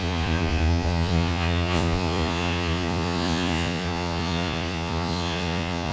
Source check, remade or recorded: remade